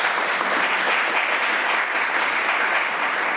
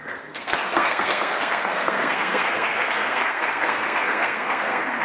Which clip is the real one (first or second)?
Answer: first